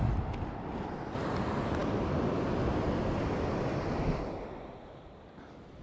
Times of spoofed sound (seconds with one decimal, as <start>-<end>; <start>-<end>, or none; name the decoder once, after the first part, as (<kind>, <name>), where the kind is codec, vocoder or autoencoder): none